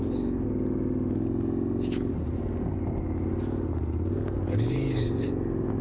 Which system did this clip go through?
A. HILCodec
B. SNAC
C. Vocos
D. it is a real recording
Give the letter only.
D